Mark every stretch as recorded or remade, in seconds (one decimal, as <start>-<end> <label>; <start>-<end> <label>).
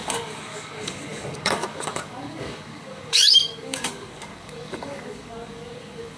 0.0-6.2 remade